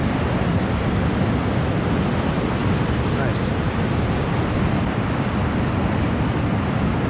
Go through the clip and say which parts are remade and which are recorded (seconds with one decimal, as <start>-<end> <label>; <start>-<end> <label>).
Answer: 0.0-7.1 recorded